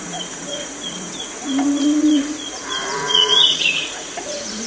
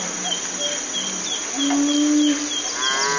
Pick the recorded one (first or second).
second